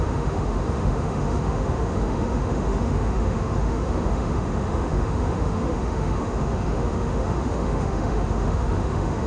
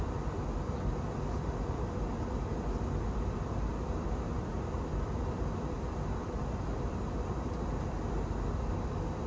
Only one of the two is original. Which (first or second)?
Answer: second